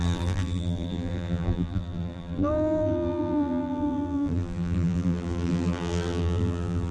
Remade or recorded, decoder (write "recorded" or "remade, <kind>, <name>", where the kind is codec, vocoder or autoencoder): remade, vocoder, BigVGAN v2